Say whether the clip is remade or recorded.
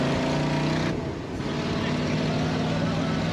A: recorded